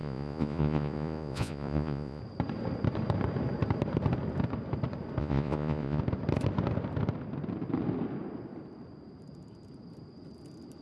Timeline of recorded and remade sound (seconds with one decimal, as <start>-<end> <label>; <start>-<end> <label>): 0.0-2.2 remade; 2.2-5.2 recorded; 5.2-6.0 remade; 6.0-10.8 recorded